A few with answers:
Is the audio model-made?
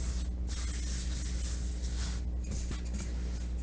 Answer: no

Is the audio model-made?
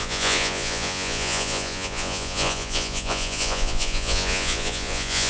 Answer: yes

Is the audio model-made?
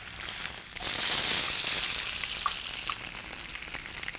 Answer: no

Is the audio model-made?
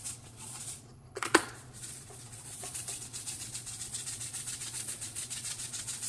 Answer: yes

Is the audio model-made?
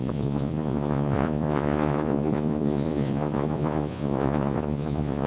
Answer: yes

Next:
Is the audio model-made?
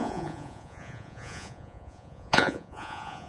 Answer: yes